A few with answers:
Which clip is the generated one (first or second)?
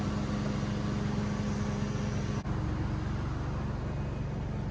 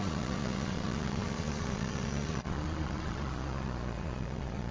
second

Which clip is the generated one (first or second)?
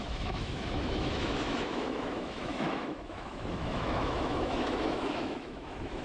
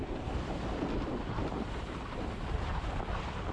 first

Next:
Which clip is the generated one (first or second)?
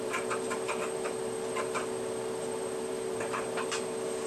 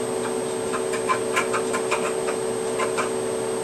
first